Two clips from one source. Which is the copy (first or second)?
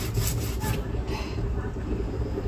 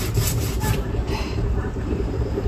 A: second